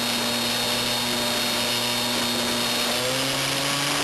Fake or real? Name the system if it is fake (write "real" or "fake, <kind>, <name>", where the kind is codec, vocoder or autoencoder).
real